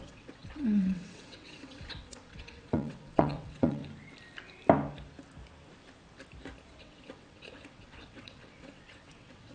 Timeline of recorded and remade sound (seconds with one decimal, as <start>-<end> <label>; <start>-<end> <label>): 0.0-3.8 remade; 3.8-6.8 recorded; 6.8-9.5 remade